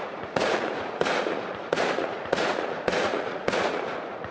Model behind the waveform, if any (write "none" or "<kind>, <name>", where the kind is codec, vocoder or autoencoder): vocoder, Vocos